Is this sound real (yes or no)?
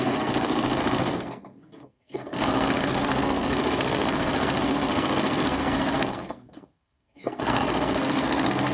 no